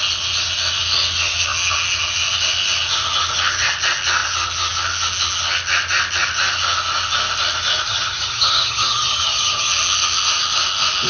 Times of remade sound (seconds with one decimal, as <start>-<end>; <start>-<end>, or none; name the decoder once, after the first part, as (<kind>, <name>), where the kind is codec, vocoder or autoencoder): 7.9-9.7 (vocoder, HiFi-GAN)